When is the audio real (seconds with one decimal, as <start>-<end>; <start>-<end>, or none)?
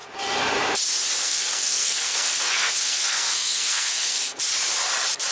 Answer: 0.0-1.2; 4.4-5.3